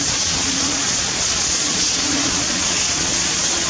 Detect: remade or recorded remade